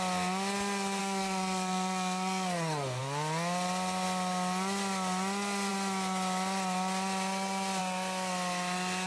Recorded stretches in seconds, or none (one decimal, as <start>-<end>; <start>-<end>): 0.0-1.0; 3.0-9.1